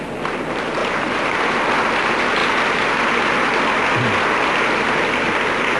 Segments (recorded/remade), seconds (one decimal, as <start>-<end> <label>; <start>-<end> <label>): 0.0-0.8 recorded; 0.8-1.6 remade; 1.6-5.8 recorded